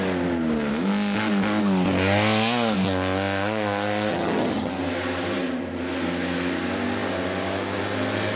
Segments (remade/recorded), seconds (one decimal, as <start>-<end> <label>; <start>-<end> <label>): 0.0-4.1 recorded; 4.1-4.7 remade; 4.7-8.4 recorded